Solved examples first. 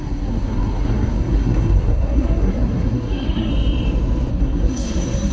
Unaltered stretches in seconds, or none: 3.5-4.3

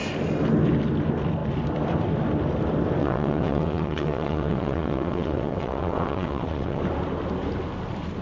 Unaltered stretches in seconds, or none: 0.0-3.0; 6.8-8.2

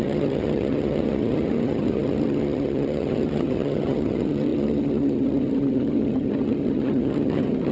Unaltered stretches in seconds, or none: none

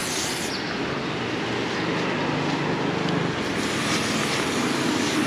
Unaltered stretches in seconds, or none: 0.0-5.3

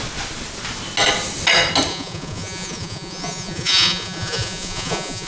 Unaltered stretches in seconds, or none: 0.0-1.9

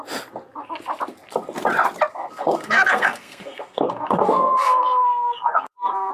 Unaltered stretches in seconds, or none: 0.0-2.1